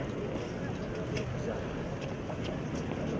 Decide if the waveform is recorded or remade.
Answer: recorded